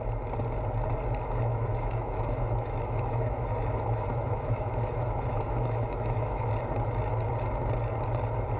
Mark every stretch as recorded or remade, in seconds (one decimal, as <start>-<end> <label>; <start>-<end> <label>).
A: 0.0-1.5 recorded; 1.5-6.5 remade; 6.5-8.6 recorded